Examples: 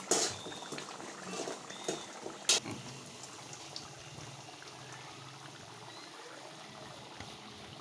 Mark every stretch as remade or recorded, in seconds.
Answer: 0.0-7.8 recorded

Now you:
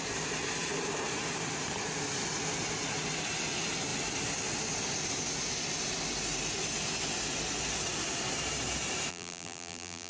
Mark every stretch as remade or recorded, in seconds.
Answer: 0.0-9.1 recorded; 9.1-10.1 remade